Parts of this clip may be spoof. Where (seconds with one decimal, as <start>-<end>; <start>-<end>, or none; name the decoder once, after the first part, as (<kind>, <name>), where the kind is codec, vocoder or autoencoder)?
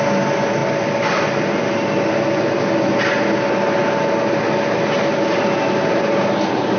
none